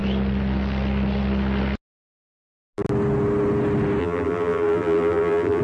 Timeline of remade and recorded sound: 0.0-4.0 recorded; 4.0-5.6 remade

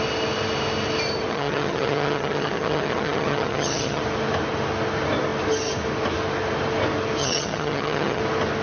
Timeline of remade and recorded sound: 0.0-1.3 recorded; 1.3-4.0 remade; 4.0-7.2 recorded; 7.2-8.2 remade; 8.2-8.6 recorded

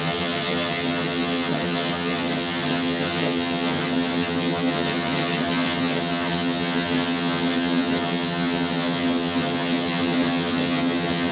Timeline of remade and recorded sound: 0.0-11.3 remade

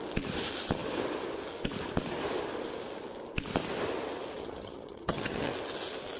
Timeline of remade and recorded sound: 0.0-4.4 recorded; 4.4-5.5 remade; 5.5-6.2 recorded

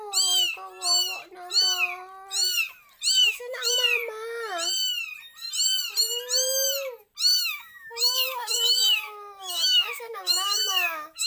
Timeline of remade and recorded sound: 0.0-3.2 recorded; 3.2-3.7 remade; 3.7-7.3 recorded; 7.3-11.3 remade